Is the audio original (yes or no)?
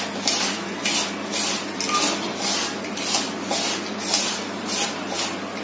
yes